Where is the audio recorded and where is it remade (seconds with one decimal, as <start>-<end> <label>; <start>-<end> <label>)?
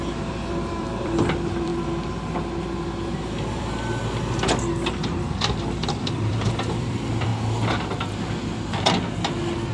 0.0-1.7 remade; 1.7-5.2 recorded; 5.2-7.3 remade; 7.3-9.7 recorded